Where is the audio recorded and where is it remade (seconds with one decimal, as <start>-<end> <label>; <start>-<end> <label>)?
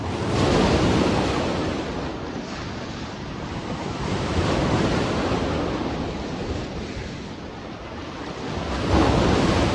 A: 0.0-9.7 recorded